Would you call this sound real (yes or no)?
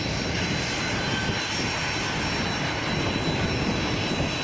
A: yes